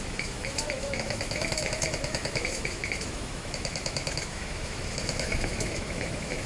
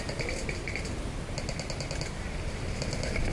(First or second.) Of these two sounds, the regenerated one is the first